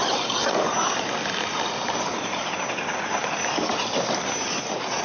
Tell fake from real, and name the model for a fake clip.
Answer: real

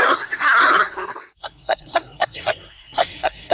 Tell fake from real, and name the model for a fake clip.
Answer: fake, codec, SNAC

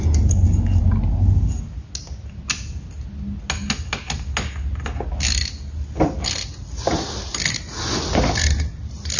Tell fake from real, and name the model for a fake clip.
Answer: real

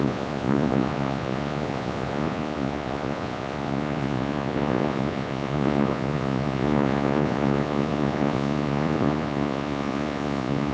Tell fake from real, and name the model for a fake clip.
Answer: fake, vocoder, Vocos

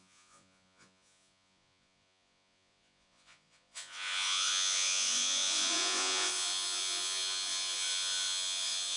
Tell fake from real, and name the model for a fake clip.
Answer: fake, vocoder, Vocos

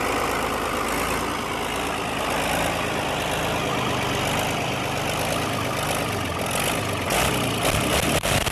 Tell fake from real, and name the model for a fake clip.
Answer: real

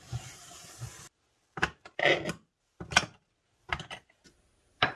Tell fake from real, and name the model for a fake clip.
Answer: real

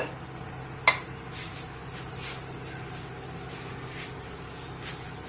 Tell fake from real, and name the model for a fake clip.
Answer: real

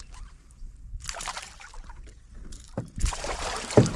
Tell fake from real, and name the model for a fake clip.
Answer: fake, vocoder, BigVGAN v2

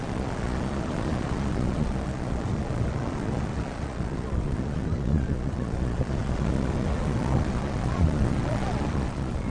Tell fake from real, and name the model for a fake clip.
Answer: fake, vocoder, Vocos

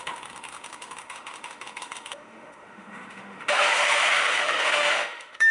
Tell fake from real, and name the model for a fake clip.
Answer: fake, autoencoder, DAC-VAE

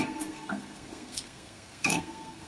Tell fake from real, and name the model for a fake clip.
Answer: fake, codec, SNAC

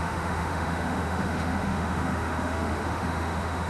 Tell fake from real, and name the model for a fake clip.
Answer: fake, autoencoder, DAC-VAE